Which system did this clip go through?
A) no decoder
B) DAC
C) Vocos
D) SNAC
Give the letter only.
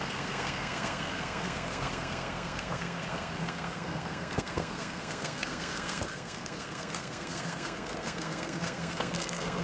D